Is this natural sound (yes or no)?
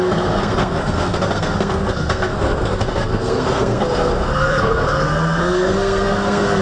no